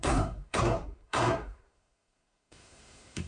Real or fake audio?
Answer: fake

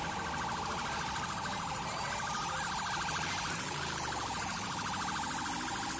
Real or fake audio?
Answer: real